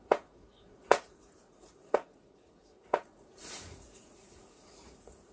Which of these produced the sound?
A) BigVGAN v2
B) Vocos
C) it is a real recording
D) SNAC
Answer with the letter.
B